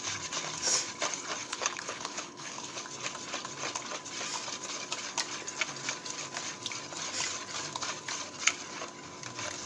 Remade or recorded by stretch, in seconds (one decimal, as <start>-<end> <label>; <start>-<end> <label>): 0.0-1.4 recorded; 1.4-2.8 remade; 2.8-9.7 recorded